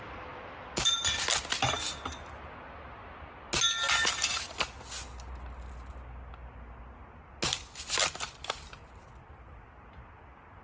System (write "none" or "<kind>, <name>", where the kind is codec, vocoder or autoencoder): none